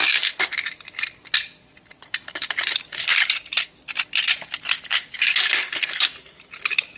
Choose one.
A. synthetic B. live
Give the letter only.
B